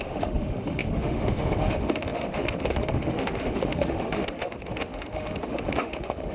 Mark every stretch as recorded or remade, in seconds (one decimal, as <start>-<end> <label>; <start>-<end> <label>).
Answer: 0.0-6.3 remade